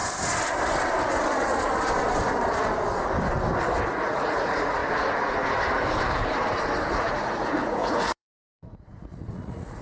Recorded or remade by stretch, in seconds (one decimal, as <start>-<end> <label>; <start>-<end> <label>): 0.0-3.9 recorded; 3.9-4.8 remade; 4.8-6.9 recorded; 6.9-9.8 remade